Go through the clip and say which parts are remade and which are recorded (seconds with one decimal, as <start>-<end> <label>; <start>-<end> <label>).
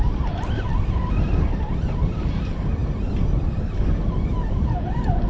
0.0-5.3 recorded